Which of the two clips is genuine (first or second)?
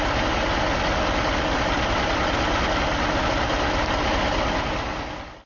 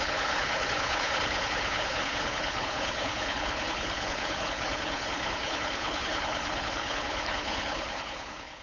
first